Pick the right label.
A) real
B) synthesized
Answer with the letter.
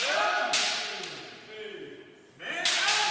A